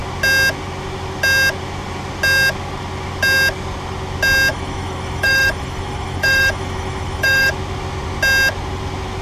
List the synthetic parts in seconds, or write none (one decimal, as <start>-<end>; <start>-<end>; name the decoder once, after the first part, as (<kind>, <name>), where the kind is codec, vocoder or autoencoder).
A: 4.5-7.5 (autoencoder, DAC-VAE)